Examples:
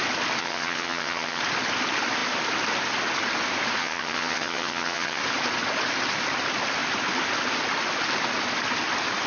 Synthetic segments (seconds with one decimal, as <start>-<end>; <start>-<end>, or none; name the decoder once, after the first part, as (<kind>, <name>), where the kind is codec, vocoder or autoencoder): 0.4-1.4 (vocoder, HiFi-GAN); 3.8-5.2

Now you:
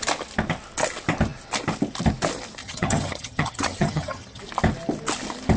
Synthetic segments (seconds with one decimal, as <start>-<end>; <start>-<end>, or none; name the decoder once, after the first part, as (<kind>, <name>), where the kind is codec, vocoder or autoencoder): 2.6-4.4 (vocoder, HiFi-GAN)

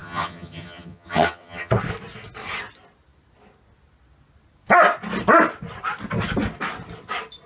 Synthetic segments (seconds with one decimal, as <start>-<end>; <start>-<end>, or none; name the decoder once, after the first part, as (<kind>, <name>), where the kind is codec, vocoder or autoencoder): 0.0-1.7 (vocoder, HiFi-GAN)